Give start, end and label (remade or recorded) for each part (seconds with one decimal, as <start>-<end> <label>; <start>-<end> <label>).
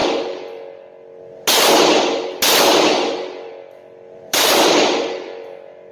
0.0-3.5 recorded; 3.5-5.9 remade